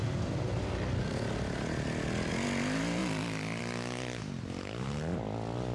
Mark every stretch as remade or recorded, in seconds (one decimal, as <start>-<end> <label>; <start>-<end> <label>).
0.0-5.7 recorded